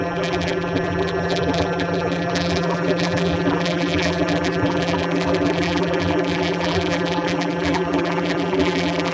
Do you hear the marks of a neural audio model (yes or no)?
yes